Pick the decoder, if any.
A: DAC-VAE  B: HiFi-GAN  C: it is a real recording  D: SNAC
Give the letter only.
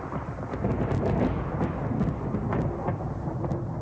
C